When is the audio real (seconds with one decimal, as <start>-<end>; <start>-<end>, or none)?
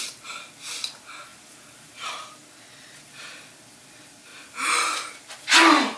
0.0-1.3; 2.1-4.3; 5.4-6.0